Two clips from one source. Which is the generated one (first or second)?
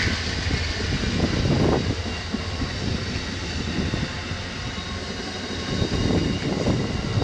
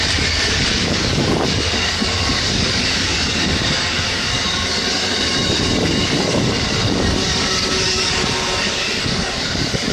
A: second